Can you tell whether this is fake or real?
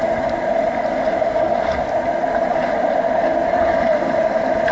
real